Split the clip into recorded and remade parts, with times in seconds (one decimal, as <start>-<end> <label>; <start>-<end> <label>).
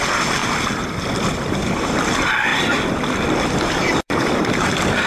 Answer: 0.0-0.4 recorded; 0.4-2.1 remade; 2.1-2.5 recorded; 2.5-4.6 remade; 4.6-5.1 recorded